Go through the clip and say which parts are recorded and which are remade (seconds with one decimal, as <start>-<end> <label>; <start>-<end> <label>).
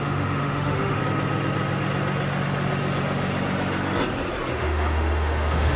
0.0-1.0 remade; 1.0-4.5 recorded; 4.5-5.8 remade